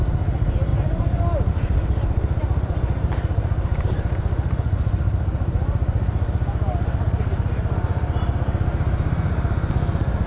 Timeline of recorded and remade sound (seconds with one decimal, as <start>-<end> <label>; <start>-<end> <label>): 0.0-10.3 recorded